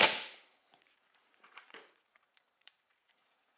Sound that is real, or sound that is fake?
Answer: fake